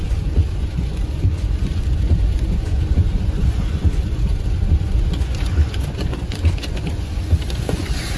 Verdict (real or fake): fake